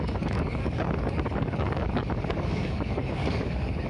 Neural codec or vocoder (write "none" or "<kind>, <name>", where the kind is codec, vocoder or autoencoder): codec, DAC